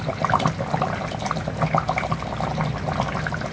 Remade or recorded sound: recorded